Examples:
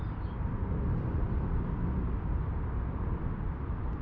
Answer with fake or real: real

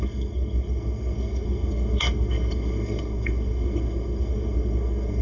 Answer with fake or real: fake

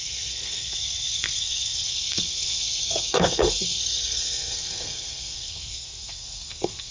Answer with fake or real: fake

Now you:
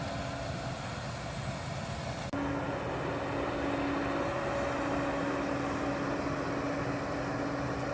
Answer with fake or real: real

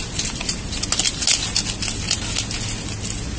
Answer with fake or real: real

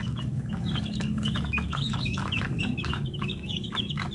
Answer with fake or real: fake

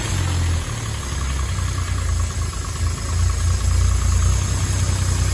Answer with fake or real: real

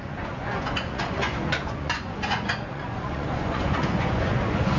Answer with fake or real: fake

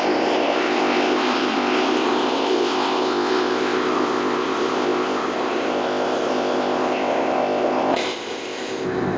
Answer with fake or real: fake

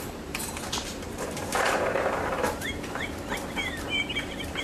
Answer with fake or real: fake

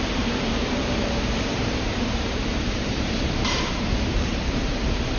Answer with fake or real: fake